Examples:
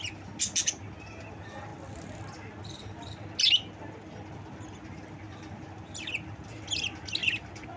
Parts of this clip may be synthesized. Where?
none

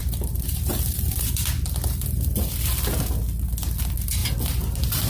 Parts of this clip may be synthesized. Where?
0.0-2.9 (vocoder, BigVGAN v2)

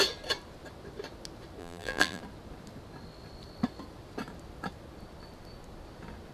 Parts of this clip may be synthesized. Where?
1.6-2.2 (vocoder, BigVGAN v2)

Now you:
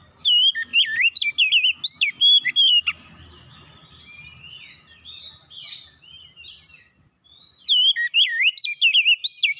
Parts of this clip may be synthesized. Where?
none

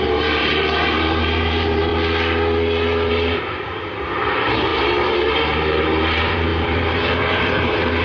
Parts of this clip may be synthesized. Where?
0.0-1.9 (vocoder, BigVGAN v2); 3.1-8.0

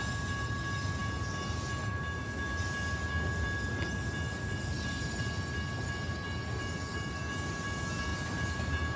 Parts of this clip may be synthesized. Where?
8.1-9.0 (vocoder, BigVGAN v2)

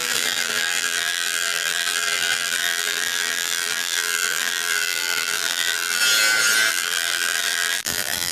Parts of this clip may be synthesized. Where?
0.0-6.0 (vocoder, BigVGAN v2); 6.7-8.3

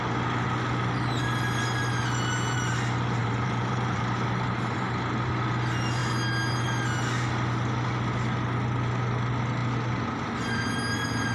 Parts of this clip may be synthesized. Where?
3.2-5.3 (vocoder, BigVGAN v2)